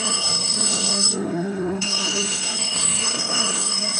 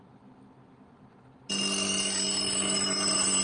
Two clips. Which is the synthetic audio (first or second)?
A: first